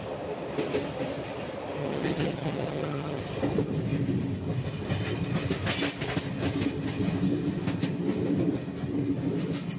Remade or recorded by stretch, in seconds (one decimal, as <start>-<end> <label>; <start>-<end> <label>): 0.0-1.8 recorded; 1.8-3.2 remade; 3.2-9.8 recorded

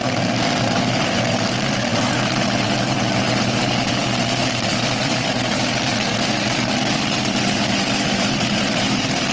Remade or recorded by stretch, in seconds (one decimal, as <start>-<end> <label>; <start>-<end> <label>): 0.0-0.8 recorded; 0.8-9.3 remade

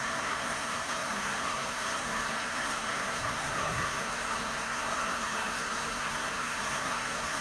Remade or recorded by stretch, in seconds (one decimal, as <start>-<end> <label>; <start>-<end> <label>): 0.0-7.4 remade

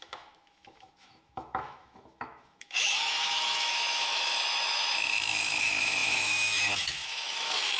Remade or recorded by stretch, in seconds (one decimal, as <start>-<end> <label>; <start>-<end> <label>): 0.0-7.8 remade

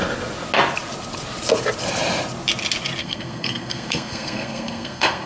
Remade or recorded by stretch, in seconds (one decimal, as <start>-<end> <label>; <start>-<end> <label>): 0.0-3.0 recorded; 3.0-5.3 remade

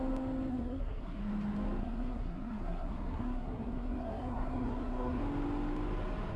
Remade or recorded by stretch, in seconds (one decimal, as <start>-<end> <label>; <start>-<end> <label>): 0.0-0.5 recorded; 0.5-1.2 remade; 1.2-1.8 recorded; 1.8-5.2 remade; 5.2-6.4 recorded

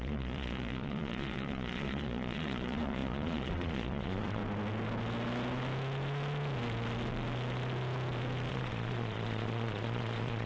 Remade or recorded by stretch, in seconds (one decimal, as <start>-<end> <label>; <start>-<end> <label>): 0.0-4.4 remade; 4.4-8.5 recorded; 8.5-10.5 remade

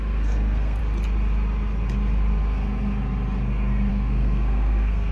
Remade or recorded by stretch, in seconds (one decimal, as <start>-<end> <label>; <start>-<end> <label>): 0.0-0.8 remade; 0.8-3.9 recorded; 3.9-5.1 remade